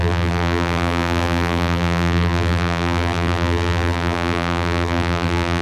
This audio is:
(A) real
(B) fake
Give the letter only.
B